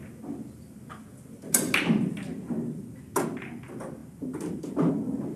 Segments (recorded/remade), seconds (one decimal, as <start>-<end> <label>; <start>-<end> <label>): 0.0-5.4 recorded